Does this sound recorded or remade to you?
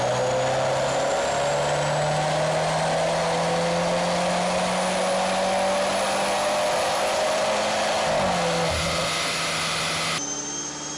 recorded